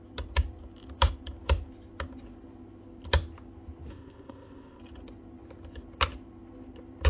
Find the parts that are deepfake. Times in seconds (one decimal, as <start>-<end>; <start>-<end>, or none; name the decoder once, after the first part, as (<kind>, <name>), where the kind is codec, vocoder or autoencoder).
3.9-4.8 (codec, ZipCodec)